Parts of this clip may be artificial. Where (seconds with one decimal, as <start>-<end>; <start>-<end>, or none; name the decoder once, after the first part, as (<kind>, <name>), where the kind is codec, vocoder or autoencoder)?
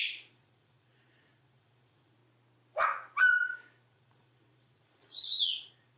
0.0-2.2 (vocoder, Vocos); 3.9-6.0